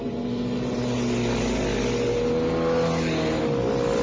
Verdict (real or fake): real